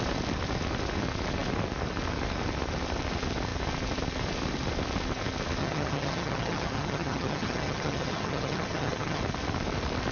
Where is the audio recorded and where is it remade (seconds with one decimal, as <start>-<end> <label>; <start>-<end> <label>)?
0.0-5.6 recorded; 5.6-9.2 remade; 9.2-10.1 recorded